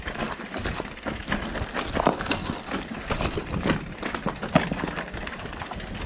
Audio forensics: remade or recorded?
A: remade